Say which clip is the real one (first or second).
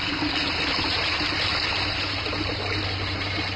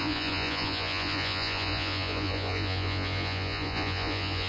first